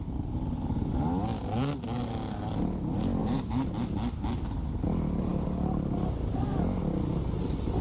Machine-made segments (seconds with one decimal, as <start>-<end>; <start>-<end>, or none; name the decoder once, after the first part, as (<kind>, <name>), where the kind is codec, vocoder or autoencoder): 3.2-3.7 (vocoder, BigVGAN v2)